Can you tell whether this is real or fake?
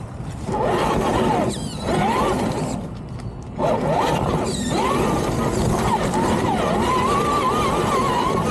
real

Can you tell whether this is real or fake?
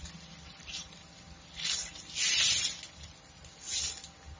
real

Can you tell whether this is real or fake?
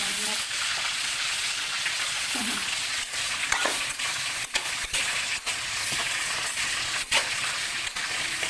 fake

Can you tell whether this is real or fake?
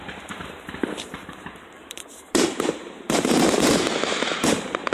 fake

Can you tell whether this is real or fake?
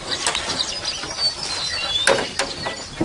real